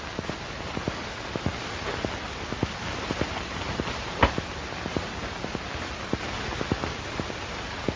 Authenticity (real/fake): real